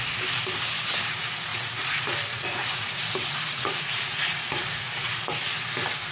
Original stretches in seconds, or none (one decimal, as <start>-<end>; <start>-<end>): 0.0-1.5; 5.2-6.1